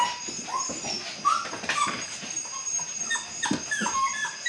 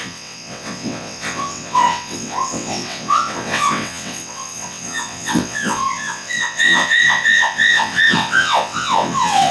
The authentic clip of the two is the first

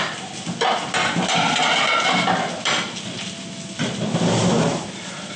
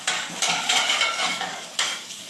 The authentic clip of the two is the first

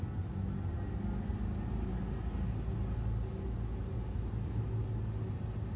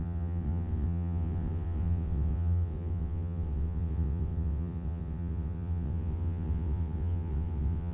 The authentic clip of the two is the first